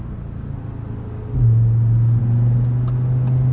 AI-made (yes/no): no